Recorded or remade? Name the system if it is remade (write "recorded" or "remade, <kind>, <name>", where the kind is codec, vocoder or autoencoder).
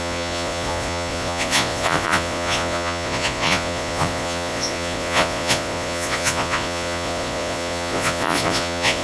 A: remade, vocoder, Vocos